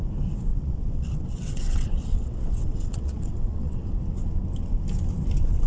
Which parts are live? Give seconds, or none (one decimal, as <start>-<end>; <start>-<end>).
0.0-0.5; 3.9-5.7